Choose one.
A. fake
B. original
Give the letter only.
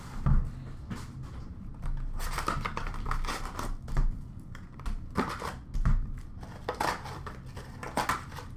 B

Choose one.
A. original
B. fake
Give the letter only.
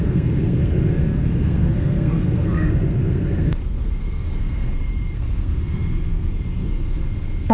B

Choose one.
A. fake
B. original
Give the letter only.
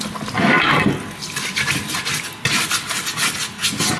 B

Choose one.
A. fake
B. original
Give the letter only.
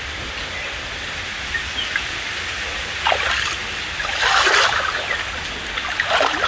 B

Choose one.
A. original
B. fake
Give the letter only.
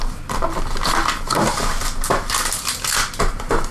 A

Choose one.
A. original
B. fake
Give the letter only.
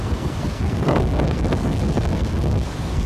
B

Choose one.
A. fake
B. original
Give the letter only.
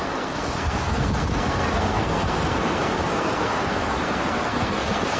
A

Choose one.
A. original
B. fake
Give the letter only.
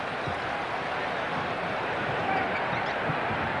A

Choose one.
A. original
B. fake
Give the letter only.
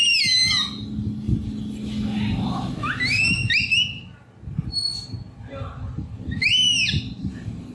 A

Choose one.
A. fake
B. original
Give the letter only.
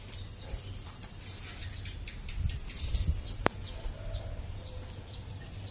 B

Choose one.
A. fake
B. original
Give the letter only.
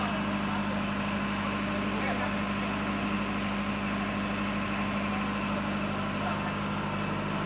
B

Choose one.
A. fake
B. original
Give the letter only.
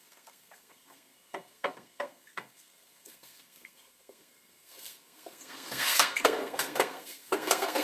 A